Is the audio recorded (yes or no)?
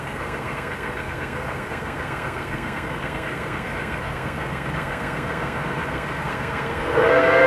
no